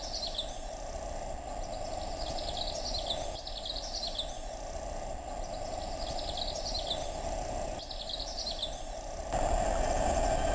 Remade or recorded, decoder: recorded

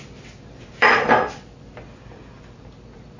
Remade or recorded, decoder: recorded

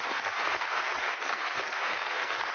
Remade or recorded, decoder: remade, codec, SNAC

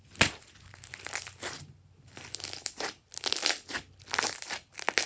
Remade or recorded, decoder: recorded